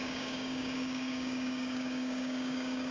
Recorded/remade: remade